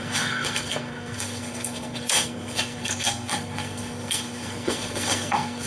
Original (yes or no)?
no